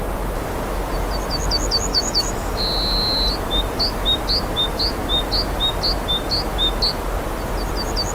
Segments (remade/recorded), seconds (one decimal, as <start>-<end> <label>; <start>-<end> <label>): 0.0-1.9 recorded; 1.9-2.6 remade; 2.6-8.1 recorded

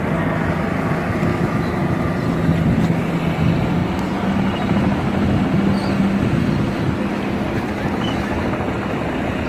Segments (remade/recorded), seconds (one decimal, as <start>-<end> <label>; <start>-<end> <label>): 0.0-1.3 recorded; 1.3-1.8 remade; 1.8-9.5 recorded

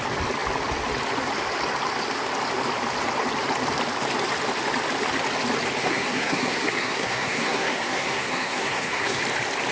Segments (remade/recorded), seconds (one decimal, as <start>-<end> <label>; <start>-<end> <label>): 0.0-5.8 recorded; 5.8-9.2 remade; 9.2-9.7 recorded

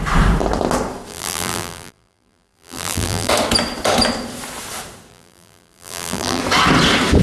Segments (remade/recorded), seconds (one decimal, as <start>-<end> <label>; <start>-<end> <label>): 0.0-1.1 recorded; 1.1-3.3 remade; 3.3-5.1 recorded; 5.1-6.4 remade; 6.4-7.2 recorded

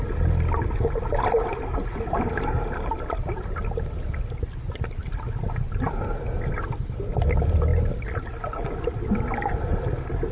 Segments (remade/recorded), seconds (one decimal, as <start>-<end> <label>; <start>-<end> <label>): 0.0-10.3 recorded